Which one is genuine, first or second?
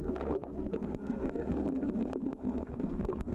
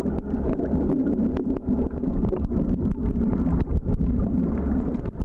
second